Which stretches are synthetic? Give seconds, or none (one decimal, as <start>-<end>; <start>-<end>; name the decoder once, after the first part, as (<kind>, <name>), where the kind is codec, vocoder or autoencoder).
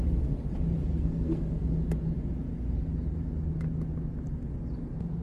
0.9-1.7 (codec, SNAC)